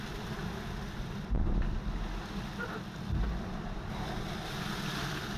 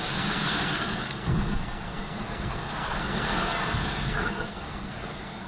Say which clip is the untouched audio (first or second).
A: first